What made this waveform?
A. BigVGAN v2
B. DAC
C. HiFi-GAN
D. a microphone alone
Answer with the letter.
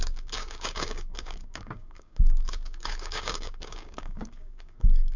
B